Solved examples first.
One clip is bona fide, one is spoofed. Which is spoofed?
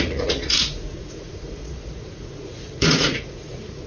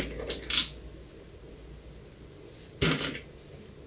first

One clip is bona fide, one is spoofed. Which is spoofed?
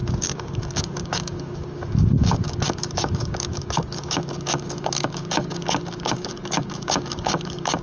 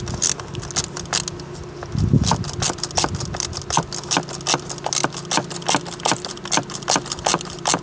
first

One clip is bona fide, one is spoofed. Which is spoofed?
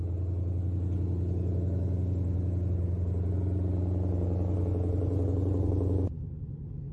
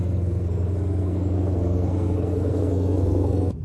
second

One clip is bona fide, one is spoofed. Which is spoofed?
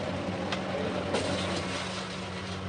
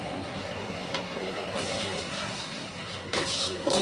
second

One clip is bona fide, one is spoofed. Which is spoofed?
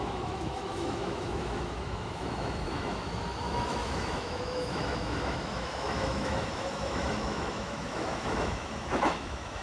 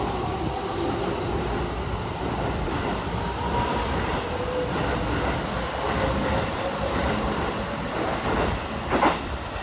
first